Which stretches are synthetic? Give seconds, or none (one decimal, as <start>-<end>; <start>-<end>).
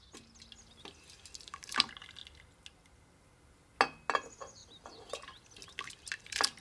none